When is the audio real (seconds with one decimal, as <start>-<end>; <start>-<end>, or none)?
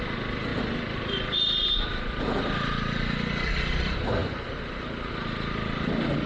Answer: 0.0-6.3